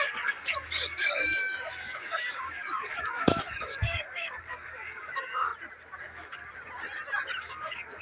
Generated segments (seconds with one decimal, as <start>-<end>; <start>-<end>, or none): 0.0-5.5; 6.0-6.4; 7.4-8.0